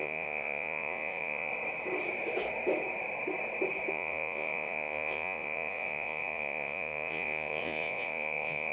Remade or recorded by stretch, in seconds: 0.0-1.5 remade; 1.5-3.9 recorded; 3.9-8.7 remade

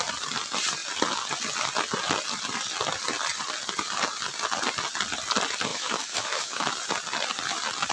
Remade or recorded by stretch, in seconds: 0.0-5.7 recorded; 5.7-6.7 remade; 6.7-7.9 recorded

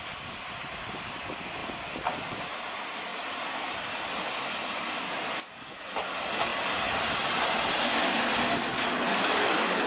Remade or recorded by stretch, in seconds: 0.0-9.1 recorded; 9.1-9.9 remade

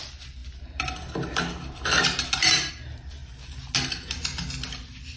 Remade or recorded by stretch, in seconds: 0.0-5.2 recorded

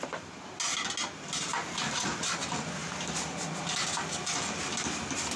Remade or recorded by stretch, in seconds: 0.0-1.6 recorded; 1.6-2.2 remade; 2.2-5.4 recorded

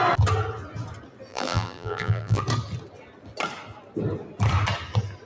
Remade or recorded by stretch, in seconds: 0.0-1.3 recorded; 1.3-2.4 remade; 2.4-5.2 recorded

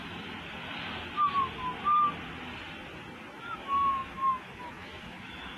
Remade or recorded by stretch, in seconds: 0.0-3.4 recorded; 3.4-5.6 remade

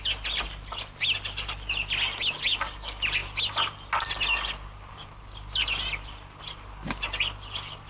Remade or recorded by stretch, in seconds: 0.0-7.9 recorded